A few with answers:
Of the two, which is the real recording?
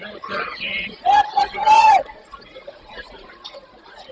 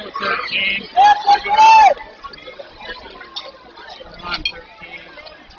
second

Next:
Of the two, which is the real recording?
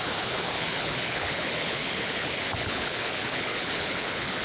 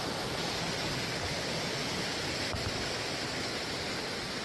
second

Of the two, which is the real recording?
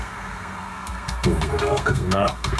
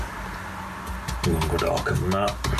second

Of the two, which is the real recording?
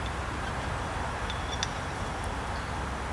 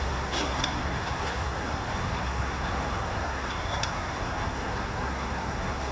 first